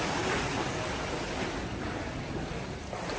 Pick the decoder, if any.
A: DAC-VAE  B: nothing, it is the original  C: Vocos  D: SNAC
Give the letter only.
B